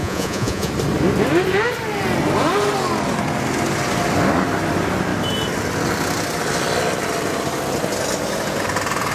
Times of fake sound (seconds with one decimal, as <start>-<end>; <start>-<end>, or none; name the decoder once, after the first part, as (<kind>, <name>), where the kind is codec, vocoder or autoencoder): 0.0-0.7 (vocoder, Vocos)